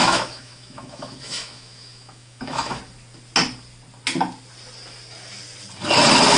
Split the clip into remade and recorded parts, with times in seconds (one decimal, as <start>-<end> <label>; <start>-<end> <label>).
0.0-2.8 remade; 2.8-6.4 recorded